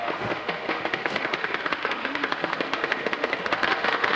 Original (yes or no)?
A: no